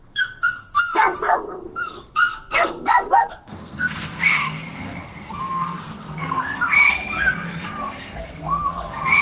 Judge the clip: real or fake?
fake